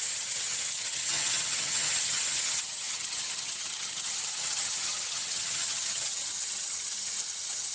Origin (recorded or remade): remade